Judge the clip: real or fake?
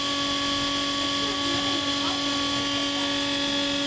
real